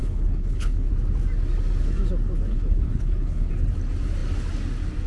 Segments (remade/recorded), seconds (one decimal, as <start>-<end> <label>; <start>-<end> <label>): 0.0-0.9 remade; 0.9-2.5 recorded; 2.5-3.5 remade; 3.5-5.1 recorded